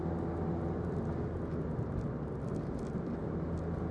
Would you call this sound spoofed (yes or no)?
no